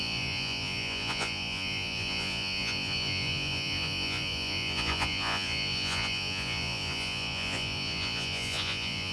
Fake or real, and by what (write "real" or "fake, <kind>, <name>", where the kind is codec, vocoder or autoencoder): fake, vocoder, Vocos